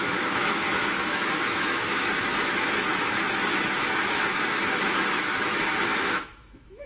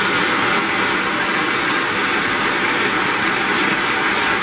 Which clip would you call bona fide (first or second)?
second